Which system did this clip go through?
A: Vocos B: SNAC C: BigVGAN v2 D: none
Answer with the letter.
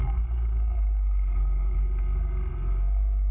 B